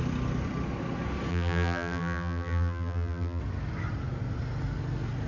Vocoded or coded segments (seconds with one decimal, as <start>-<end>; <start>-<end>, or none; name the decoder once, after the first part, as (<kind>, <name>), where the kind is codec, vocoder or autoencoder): 1.3-3.4 (vocoder, BigVGAN v2)